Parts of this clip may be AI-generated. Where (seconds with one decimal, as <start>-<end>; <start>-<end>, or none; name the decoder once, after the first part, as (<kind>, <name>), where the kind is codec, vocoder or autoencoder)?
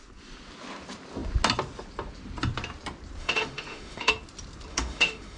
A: 3.2-4.1 (autoencoder, DAC-VAE); 4.7-5.4